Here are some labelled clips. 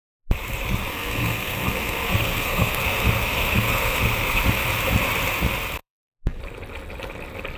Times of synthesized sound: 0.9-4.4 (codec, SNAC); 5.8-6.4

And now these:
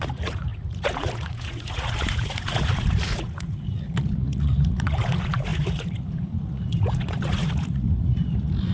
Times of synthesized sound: 0.0-8.7 (vocoder, Vocos)

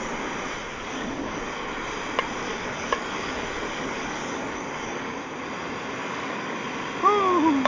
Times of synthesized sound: 0.7-1.4 (codec, DAC); 2.5-5.0; 6.0-6.6

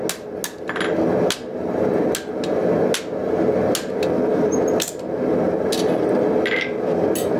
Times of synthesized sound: none

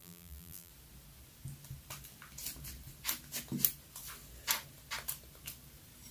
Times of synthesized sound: 0.0-0.7 (vocoder, BigVGAN v2)